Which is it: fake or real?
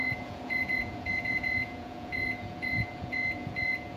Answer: fake